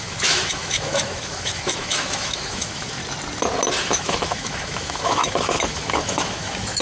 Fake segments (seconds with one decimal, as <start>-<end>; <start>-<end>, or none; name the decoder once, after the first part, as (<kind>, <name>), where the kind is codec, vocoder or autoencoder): 0.0-3.0 (autoencoder, DAC-VAE); 3.8-6.8